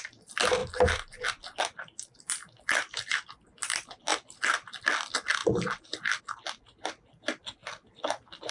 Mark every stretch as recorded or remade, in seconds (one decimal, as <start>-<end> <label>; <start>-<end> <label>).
0.0-0.6 recorded; 0.6-3.3 remade; 3.3-4.1 recorded; 4.1-4.7 remade; 4.7-7.6 recorded; 7.6-8.5 remade